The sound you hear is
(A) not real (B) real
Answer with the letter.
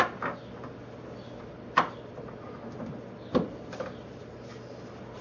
B